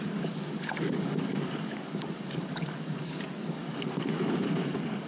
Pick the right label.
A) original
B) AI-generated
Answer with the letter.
B